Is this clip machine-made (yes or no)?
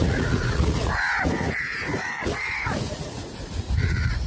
yes